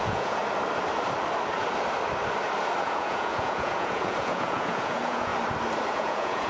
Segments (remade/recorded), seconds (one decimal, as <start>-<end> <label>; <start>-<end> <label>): 0.0-0.4 remade; 0.4-2.8 recorded; 2.8-5.3 remade; 5.3-5.9 recorded; 5.9-6.5 remade